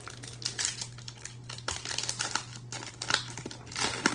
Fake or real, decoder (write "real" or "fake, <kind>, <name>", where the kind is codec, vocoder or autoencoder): real